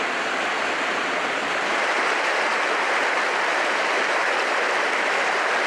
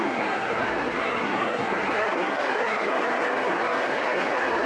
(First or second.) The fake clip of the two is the second